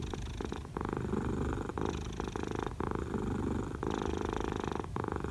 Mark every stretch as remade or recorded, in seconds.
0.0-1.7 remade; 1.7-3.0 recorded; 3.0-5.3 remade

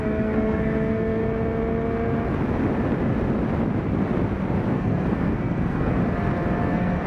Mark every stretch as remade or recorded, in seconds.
0.0-1.2 remade; 1.2-4.7 recorded; 4.7-6.0 remade; 6.0-6.6 recorded; 6.6-7.1 remade

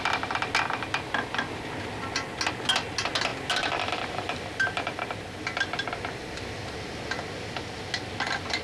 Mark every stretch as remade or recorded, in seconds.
0.0-3.3 recorded; 3.3-5.0 remade; 5.0-8.6 recorded